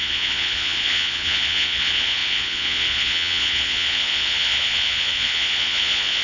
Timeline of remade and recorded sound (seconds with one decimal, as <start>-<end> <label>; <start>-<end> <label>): 0.0-6.2 remade